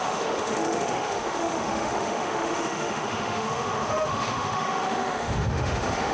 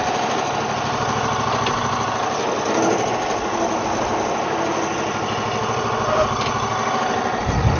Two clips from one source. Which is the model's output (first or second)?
first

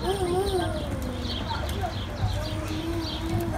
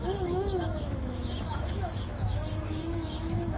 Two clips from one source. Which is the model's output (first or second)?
second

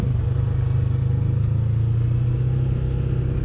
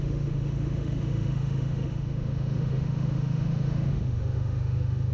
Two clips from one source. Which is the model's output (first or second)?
second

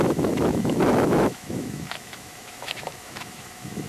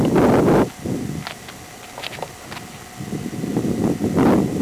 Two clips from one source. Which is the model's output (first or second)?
first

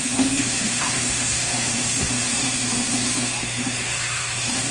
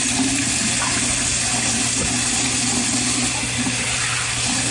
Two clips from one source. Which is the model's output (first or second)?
first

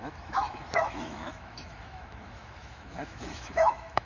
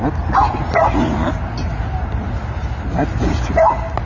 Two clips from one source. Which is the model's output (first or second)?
first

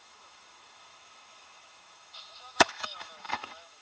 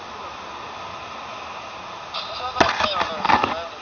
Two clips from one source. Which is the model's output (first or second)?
first